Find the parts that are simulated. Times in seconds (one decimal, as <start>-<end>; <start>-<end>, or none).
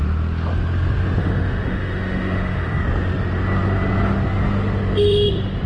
1.2-2.8